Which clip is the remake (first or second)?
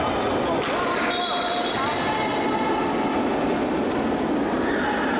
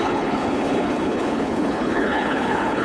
second